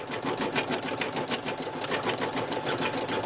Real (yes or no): yes